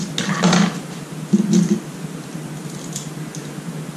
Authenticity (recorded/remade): recorded